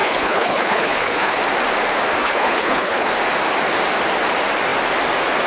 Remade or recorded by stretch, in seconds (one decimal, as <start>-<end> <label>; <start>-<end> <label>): 0.0-1.4 remade; 1.4-2.2 recorded; 2.2-3.1 remade; 3.1-5.5 recorded